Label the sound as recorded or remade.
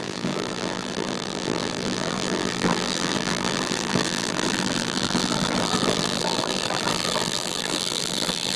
remade